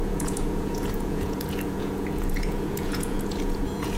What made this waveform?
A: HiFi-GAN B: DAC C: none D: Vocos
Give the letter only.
D